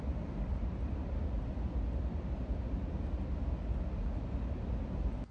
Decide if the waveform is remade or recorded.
recorded